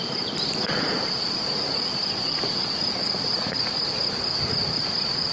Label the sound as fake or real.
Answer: fake